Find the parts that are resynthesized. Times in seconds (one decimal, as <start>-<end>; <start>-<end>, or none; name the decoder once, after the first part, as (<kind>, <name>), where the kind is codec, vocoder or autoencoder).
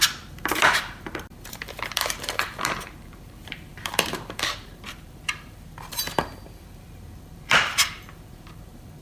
0.0-9.0 (vocoder, BigVGAN v2)